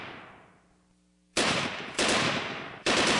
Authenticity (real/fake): real